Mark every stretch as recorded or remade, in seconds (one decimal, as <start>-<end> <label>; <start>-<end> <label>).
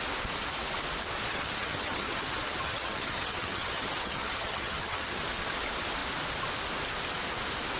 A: 0.0-1.3 recorded; 1.3-5.2 remade; 5.2-7.8 recorded